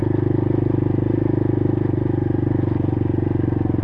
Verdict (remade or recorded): recorded